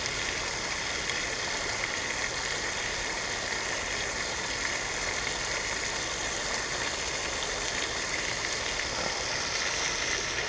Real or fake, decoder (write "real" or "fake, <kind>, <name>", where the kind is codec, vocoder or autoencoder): real